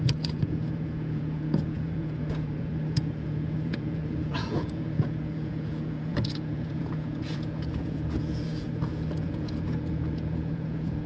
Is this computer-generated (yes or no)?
yes